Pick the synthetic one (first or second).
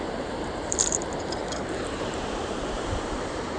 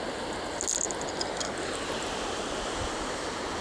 first